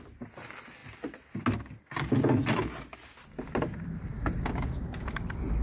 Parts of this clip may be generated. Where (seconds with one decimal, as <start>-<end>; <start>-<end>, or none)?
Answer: none